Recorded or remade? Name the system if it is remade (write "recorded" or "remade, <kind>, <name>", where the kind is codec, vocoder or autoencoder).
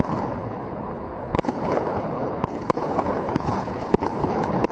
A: remade, codec, HILCodec